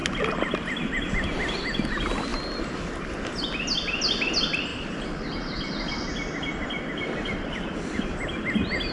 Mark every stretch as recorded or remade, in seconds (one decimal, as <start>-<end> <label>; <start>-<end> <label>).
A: 0.0-8.9 recorded